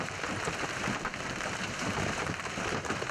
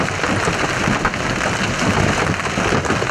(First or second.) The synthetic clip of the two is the first